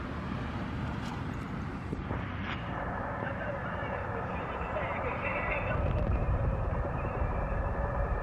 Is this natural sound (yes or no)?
no